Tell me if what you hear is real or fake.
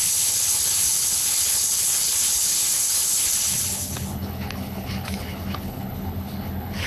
fake